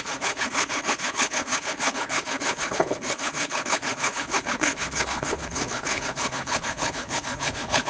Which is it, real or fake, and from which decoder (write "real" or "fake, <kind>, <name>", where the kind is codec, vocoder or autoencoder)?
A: fake, codec, HILCodec